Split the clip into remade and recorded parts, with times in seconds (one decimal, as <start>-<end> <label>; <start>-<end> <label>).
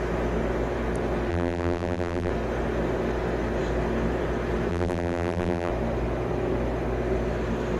0.0-1.3 recorded; 1.3-2.3 remade; 2.3-4.7 recorded; 4.7-5.7 remade; 5.7-7.8 recorded